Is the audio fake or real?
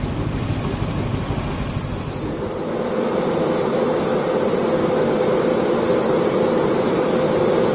real